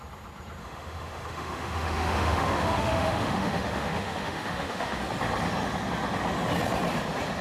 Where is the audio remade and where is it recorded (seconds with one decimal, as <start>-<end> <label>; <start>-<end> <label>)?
0.0-0.6 recorded; 0.6-5.0 remade; 5.0-7.4 recorded